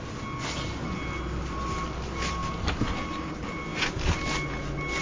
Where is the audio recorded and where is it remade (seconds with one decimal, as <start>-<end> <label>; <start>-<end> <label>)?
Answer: 0.0-2.4 recorded; 2.4-3.3 remade; 3.3-3.7 recorded; 3.7-4.2 remade; 4.2-5.0 recorded